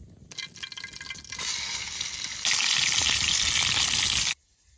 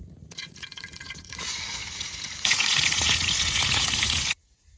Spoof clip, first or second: second